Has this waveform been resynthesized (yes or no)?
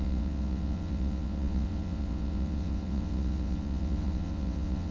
yes